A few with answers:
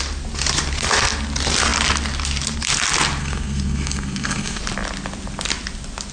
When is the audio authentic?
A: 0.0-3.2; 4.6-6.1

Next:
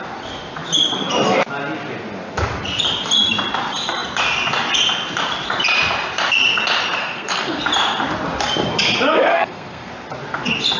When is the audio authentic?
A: 0.0-7.0; 7.6-9.3; 9.9-10.8

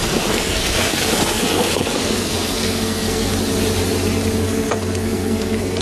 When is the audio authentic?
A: 3.3-4.4

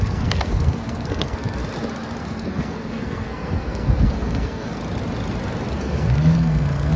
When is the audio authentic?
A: 1.6-2.2; 4.8-5.7

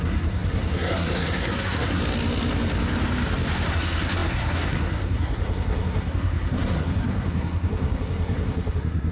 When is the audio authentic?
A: 2.0-3.7

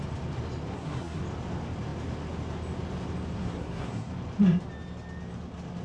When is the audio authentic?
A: 0.0-0.7; 1.2-3.3; 4.1-5.8

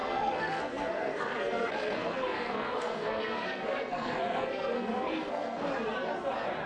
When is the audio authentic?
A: 5.7-6.7